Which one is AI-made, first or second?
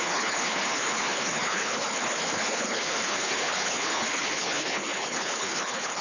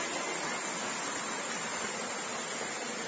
first